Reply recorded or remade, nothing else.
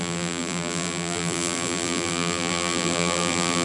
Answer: remade